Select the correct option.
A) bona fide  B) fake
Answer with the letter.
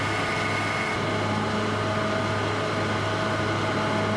A